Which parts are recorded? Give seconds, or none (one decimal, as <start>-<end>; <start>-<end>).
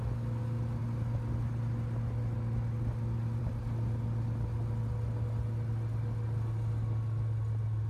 0.0-7.9